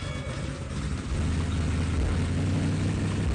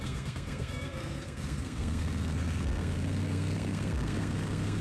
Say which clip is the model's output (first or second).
second